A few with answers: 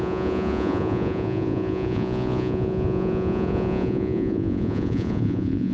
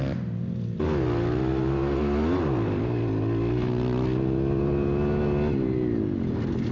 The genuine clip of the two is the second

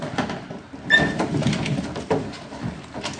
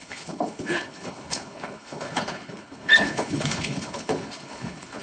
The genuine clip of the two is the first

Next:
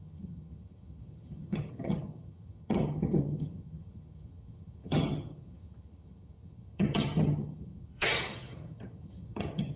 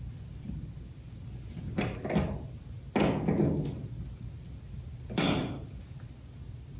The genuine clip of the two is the second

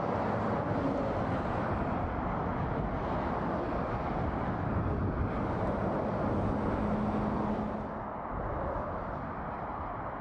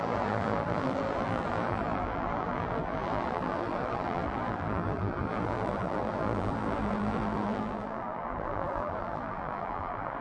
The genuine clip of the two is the first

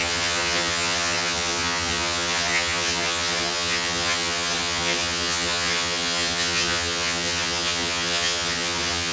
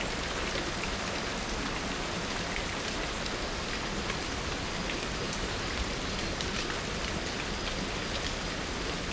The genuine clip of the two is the second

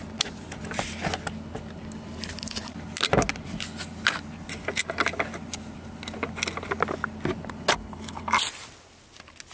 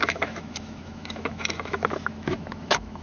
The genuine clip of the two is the first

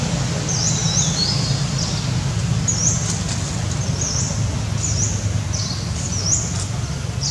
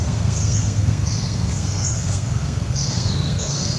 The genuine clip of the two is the first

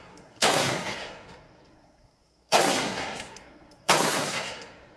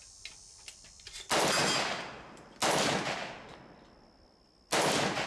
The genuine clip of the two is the second